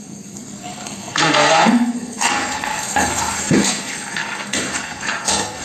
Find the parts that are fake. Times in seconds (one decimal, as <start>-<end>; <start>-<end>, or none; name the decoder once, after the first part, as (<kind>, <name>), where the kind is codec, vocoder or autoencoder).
0.0-5.6 (codec, SNAC)